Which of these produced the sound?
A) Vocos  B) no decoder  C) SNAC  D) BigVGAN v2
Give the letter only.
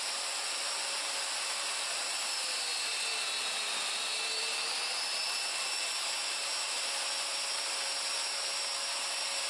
D